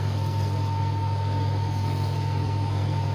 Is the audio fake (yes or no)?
yes